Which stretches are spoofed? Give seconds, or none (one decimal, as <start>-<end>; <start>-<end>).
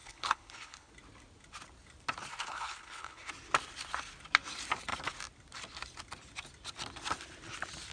0.0-0.9; 2.3-3.3